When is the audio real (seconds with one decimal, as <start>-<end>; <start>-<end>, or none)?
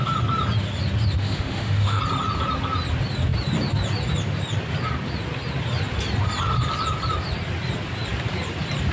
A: 0.0-1.2; 2.0-8.9